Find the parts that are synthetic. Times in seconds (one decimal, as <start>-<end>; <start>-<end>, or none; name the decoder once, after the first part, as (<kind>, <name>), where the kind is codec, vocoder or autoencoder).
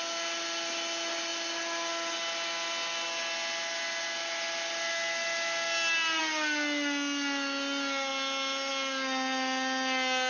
none